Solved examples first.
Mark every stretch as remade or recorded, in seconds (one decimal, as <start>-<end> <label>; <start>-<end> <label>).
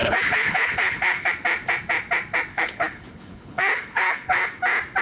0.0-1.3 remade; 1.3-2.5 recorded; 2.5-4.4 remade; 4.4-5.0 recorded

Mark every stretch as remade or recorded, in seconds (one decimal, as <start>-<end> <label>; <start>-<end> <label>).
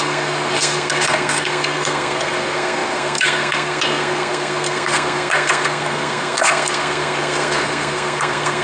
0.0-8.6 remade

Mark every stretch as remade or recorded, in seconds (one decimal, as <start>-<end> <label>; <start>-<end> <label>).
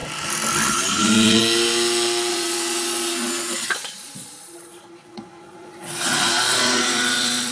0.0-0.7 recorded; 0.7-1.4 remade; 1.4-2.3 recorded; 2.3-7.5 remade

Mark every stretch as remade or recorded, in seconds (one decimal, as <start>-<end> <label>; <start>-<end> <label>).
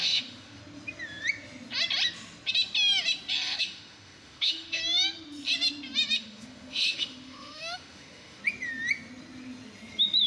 0.0-0.6 remade; 0.6-3.6 recorded; 3.6-4.8 remade; 4.8-6.2 recorded; 6.2-8.4 remade; 8.4-10.3 recorded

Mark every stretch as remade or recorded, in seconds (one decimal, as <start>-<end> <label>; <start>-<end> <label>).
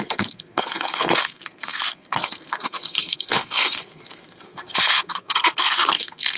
0.0-6.4 remade